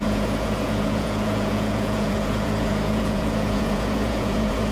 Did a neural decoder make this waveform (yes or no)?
yes